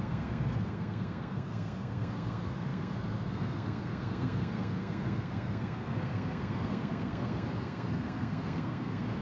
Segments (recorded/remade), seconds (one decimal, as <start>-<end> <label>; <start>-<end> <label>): 0.0-9.2 remade